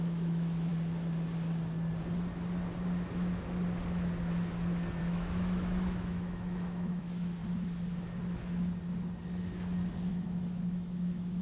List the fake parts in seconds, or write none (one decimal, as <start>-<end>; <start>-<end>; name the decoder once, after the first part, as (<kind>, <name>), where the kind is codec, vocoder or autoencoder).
0.0-0.7 (autoencoder, DAC-VAE); 5.0-7.4; 10.1-11.4